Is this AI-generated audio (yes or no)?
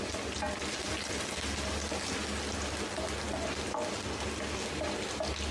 no